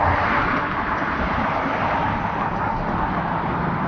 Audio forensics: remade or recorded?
recorded